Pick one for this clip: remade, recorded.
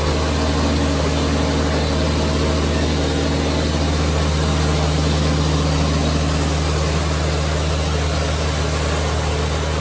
recorded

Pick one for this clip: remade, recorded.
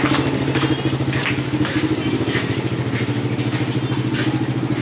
recorded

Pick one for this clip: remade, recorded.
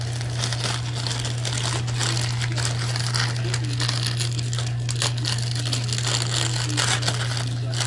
recorded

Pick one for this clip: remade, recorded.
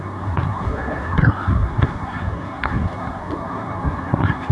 remade